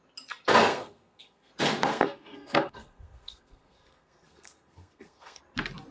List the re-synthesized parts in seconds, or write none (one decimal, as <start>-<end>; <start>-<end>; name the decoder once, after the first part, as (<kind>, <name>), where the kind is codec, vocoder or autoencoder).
0.7-1.5 (codec, SNAC); 1.9-5.4